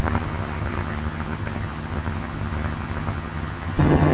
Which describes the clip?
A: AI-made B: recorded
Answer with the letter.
A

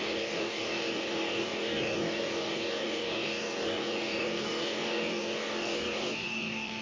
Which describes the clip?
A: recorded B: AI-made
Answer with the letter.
B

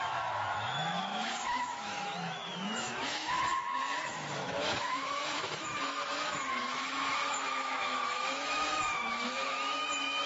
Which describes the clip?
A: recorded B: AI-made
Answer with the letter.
B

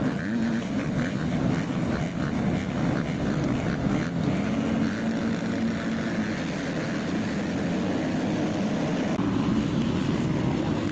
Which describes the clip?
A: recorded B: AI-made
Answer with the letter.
A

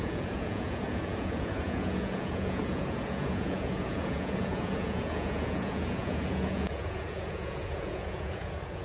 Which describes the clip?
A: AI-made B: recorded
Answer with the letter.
A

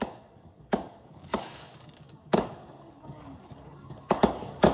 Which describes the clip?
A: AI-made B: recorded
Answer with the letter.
A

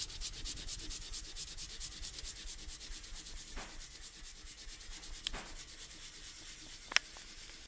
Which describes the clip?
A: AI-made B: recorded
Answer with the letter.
B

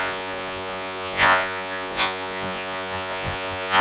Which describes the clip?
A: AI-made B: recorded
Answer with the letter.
A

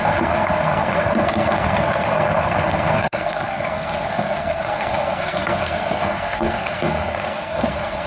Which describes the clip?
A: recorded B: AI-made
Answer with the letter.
B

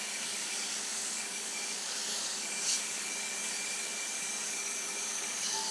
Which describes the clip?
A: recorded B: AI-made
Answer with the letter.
B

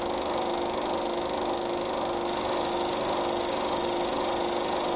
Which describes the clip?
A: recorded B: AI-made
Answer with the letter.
A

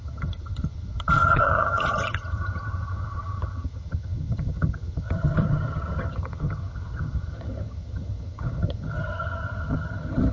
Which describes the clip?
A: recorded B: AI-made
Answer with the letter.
B